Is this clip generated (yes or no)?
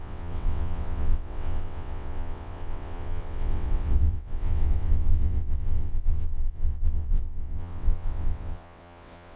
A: yes